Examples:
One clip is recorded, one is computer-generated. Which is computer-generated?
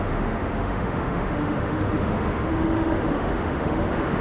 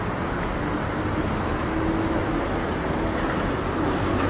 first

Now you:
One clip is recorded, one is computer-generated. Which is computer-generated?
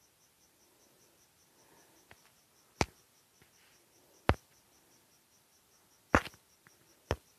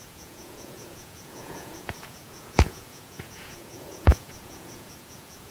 second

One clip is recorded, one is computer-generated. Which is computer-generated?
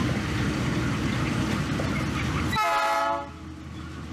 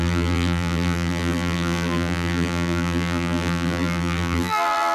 second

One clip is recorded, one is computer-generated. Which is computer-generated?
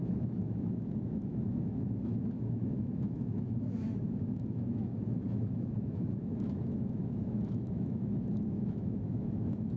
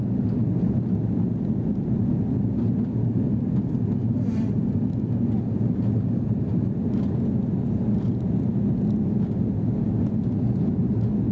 first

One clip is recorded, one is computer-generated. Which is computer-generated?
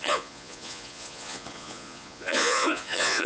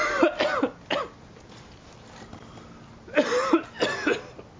first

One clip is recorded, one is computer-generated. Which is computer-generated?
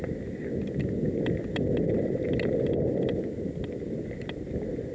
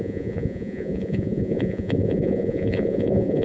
second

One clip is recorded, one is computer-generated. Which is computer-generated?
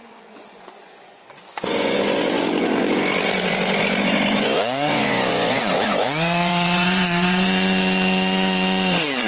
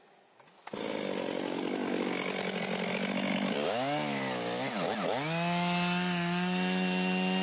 first